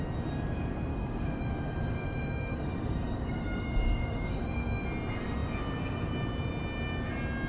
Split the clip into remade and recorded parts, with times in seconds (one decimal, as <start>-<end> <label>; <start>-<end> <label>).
0.0-0.9 recorded; 0.9-4.8 remade; 4.8-7.5 recorded